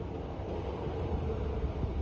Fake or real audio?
real